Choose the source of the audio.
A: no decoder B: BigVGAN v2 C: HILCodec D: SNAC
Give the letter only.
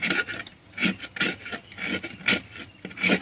A